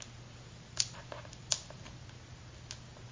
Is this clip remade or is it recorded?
recorded